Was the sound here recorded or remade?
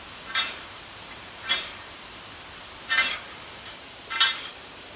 remade